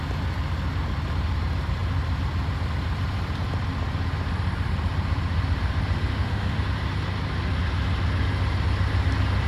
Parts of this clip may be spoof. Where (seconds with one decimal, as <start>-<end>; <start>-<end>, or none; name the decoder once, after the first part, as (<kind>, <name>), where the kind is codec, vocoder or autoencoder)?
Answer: 6.1-6.6 (autoencoder, DAC-VAE)

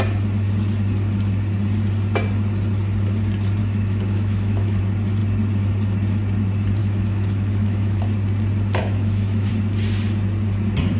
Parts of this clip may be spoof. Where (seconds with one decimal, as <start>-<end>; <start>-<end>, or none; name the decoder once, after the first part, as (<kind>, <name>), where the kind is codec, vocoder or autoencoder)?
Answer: 3.6-4.8 (autoencoder, DAC-VAE); 6.8-8.0; 8.8-9.5

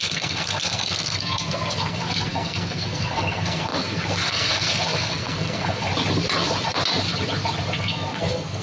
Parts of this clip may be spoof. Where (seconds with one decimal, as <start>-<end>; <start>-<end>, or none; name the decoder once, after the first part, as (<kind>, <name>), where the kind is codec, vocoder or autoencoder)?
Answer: 0.0-5.9 (codec, SNAC); 7.8-8.6

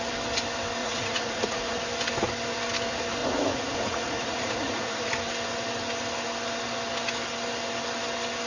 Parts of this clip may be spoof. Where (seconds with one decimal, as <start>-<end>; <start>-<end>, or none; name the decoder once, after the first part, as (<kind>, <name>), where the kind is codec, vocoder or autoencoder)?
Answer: 0.8-1.7 (vocoder, Vocos); 3.2-5.1

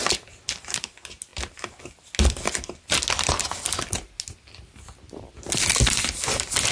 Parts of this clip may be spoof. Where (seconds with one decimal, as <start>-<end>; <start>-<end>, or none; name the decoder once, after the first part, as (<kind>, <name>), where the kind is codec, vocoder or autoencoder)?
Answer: none